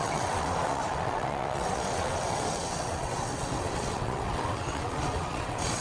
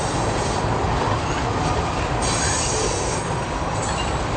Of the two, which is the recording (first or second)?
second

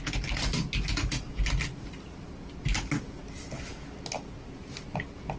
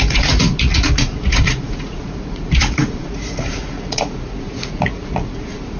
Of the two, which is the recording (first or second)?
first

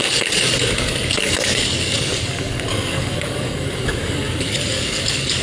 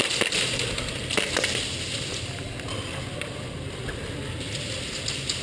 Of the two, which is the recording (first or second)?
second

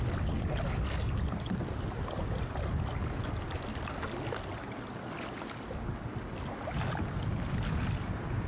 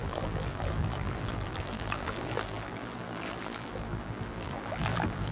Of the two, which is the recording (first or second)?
first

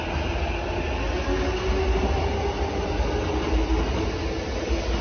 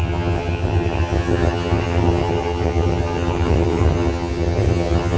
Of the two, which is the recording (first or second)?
first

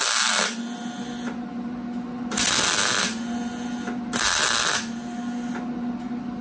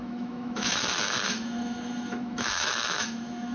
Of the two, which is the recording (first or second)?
first